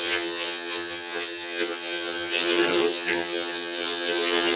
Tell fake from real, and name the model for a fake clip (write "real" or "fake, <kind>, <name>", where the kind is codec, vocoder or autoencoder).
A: fake, vocoder, HiFi-GAN